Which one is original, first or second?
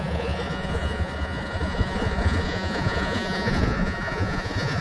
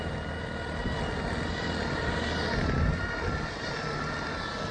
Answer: second